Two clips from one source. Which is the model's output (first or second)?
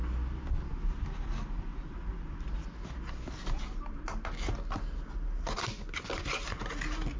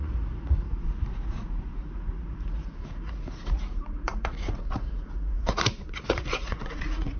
second